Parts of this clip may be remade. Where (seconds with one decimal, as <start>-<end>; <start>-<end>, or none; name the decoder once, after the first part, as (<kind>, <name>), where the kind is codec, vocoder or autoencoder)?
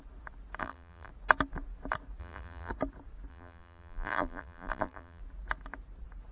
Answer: 0.6-1.1 (vocoder, BigVGAN v2); 2.2-2.7; 3.3-5.2